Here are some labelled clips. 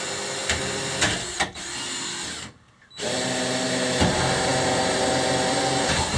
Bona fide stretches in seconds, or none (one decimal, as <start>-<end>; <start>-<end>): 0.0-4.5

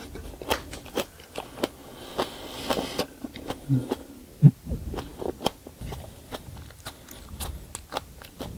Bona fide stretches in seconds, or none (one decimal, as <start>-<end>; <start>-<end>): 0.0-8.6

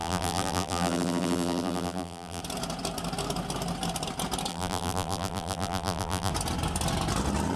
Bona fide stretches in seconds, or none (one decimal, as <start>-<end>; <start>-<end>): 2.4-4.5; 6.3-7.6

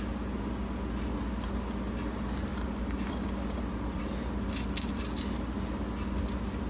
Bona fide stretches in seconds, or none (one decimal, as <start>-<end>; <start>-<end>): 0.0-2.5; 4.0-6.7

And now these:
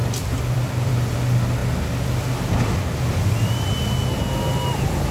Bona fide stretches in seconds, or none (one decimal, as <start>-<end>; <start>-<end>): 0.9-5.1

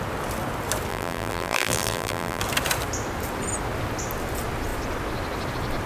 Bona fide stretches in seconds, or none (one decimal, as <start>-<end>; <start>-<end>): 0.0-0.9; 2.4-5.9